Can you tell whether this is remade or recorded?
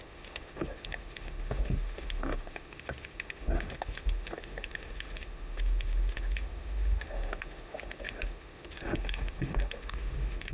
remade